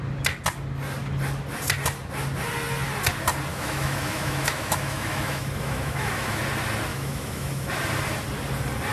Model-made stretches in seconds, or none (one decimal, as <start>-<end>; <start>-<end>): 3.5-6.4; 6.9-7.7